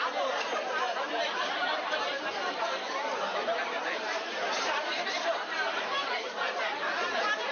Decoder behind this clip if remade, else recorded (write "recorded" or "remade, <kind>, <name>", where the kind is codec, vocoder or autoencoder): remade, vocoder, BigVGAN v2